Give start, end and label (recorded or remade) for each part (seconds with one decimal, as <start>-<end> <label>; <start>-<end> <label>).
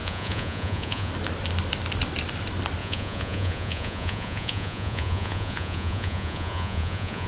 0.0-1.1 remade; 1.1-2.8 recorded; 2.8-7.3 remade